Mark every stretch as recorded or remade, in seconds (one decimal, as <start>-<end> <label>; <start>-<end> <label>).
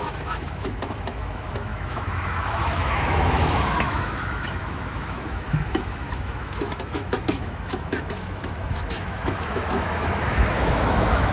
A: 0.0-11.3 remade